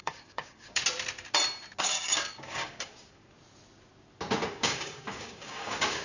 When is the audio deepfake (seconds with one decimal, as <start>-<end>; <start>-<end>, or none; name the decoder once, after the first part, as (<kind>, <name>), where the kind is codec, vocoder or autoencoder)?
0.0-0.8 (codec, DAC); 1.8-3.2; 4.5-6.0